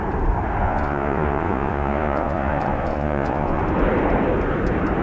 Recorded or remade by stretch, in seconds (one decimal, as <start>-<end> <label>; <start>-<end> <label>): 0.0-0.6 recorded; 0.6-3.6 remade; 3.6-5.0 recorded